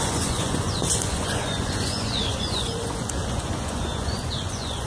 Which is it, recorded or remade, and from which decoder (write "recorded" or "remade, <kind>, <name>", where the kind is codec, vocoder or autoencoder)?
remade, vocoder, Vocos